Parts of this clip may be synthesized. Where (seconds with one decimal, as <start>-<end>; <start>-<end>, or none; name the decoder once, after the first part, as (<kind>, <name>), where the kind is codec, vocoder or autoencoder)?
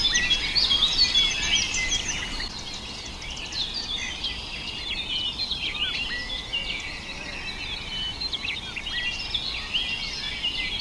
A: none